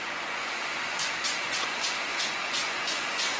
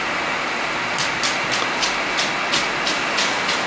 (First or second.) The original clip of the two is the second